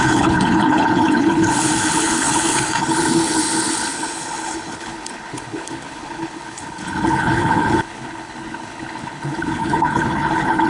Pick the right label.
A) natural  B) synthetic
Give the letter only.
B